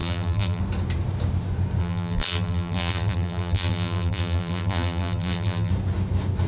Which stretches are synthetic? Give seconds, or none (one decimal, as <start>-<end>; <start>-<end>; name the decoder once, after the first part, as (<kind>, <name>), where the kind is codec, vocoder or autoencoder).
0.0-0.6 (vocoder, BigVGAN v2); 1.8-5.7